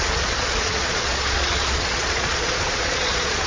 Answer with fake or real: fake